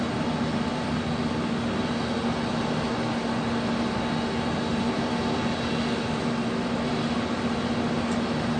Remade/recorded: recorded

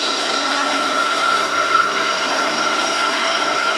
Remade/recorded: remade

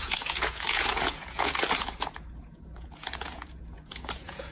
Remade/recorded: remade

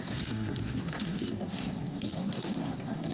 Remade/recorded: remade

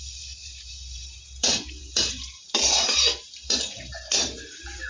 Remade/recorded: remade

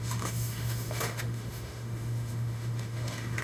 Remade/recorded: remade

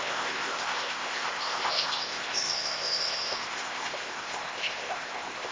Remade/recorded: remade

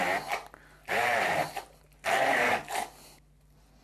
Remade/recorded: recorded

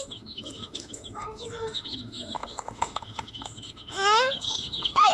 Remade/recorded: remade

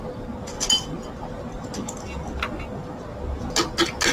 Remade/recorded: recorded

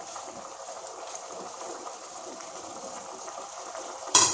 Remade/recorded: remade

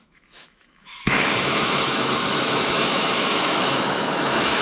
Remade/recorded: remade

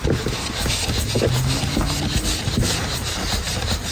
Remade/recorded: recorded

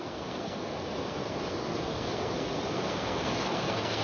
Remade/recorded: remade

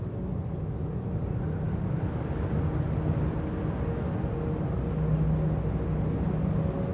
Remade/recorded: recorded